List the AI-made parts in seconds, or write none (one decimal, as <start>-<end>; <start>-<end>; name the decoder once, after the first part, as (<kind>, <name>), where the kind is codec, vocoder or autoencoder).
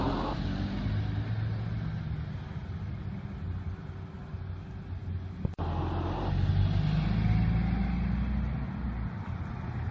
none